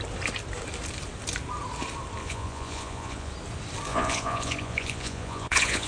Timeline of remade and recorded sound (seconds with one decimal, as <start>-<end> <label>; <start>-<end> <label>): 0.0-2.2 recorded; 2.2-3.3 remade; 3.3-3.9 recorded; 3.9-5.9 remade